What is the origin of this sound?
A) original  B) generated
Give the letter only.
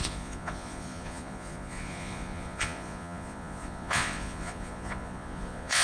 B